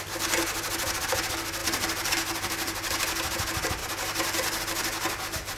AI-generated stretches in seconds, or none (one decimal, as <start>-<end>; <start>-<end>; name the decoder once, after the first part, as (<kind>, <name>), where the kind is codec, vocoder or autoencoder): none